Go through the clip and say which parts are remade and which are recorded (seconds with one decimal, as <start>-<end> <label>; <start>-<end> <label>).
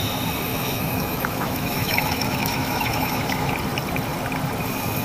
0.0-0.5 recorded; 0.5-3.5 remade; 3.5-5.0 recorded